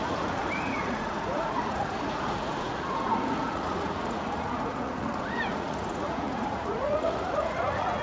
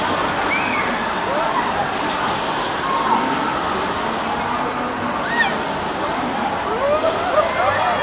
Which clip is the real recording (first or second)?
second